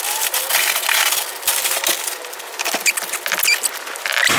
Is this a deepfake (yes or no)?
no